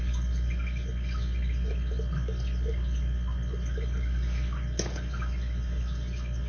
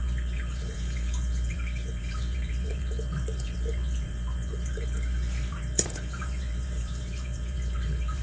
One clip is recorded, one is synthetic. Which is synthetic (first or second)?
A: second